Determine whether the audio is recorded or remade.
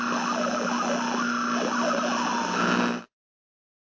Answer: recorded